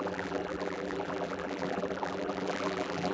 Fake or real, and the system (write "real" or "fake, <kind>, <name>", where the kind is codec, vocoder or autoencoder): fake, vocoder, BigVGAN v2